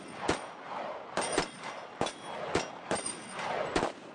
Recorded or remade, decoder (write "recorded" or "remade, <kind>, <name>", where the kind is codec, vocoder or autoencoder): recorded